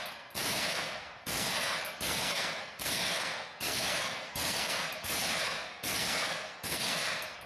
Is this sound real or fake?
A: fake